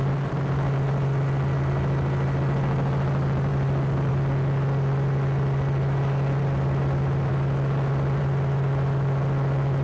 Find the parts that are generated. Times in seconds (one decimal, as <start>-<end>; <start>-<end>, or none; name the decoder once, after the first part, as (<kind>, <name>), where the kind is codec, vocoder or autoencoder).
none